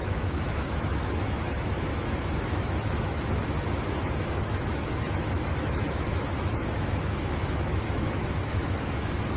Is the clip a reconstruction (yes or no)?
yes